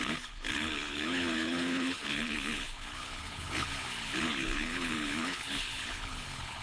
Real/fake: fake